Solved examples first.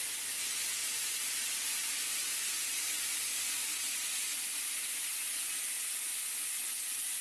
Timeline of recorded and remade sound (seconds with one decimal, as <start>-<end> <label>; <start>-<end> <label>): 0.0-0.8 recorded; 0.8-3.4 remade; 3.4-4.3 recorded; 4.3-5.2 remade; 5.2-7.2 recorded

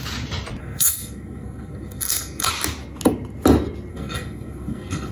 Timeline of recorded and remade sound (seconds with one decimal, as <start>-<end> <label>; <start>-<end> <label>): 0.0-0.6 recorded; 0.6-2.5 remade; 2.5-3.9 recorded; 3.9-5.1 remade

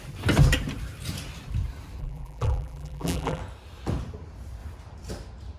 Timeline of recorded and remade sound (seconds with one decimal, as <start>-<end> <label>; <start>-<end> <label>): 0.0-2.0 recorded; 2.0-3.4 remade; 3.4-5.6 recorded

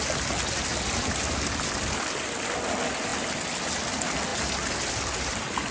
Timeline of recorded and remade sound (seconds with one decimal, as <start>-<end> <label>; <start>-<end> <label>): 0.0-5.7 recorded

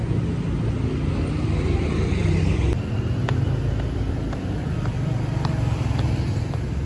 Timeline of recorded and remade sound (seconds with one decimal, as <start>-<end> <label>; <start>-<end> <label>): 0.0-1.4 recorded; 1.4-6.9 remade

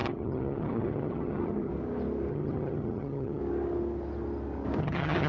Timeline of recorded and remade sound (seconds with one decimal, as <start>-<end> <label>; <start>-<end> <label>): 0.0-1.7 remade; 1.7-2.3 recorded; 2.3-3.4 remade; 3.4-4.8 recorded; 4.8-5.3 remade